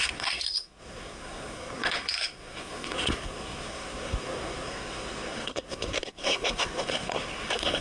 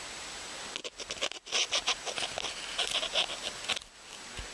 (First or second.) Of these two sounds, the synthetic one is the first